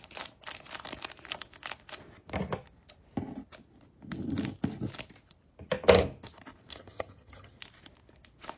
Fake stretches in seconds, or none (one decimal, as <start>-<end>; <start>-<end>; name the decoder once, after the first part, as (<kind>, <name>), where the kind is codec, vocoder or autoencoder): 6.7-7.6 (vocoder, HiFi-GAN)